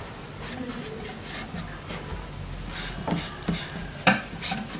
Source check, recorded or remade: remade